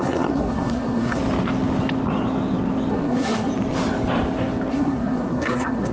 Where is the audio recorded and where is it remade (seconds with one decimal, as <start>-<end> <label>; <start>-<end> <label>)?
0.0-1.2 remade; 1.2-2.9 recorded; 2.9-3.5 remade; 3.5-4.7 recorded; 4.7-5.9 remade